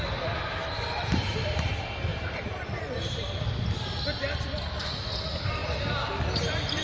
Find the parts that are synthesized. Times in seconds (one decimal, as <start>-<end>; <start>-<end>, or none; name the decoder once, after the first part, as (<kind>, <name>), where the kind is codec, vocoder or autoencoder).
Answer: 2.1-3.2 (vocoder, BigVGAN v2)